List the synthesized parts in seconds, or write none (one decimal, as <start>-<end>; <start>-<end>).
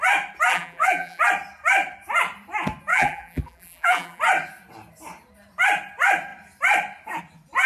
0.5-1.2; 2.9-4.2